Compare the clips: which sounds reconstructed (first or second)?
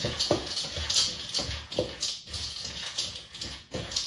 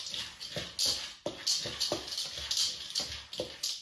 first